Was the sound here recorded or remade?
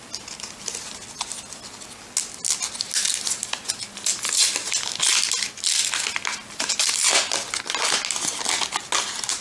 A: recorded